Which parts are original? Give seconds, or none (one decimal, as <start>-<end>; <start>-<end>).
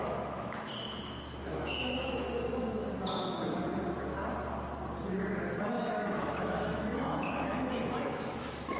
2.8-5.7